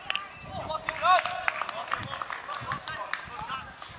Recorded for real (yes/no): yes